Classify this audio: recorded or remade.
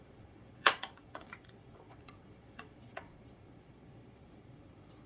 remade